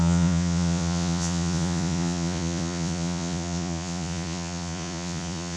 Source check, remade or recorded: remade